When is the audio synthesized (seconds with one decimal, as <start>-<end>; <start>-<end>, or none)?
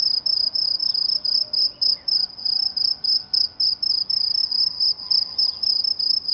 none